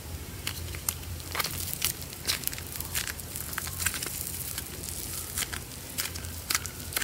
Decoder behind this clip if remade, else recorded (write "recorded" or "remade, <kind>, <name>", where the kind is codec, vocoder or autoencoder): remade, vocoder, BigVGAN v2